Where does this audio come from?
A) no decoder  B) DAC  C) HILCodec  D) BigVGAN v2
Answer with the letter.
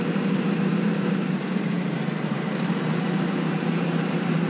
D